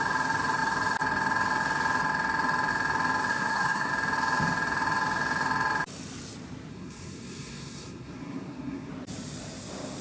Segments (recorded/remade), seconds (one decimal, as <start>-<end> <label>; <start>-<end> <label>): 0.0-3.3 recorded; 3.3-3.9 remade; 3.9-6.7 recorded; 6.7-8.9 remade; 8.9-10.0 recorded